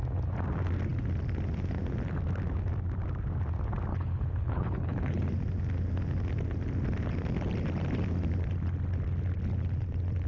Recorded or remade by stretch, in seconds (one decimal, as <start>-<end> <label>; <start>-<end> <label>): 0.0-3.9 recorded; 3.9-5.2 remade; 5.2-10.3 recorded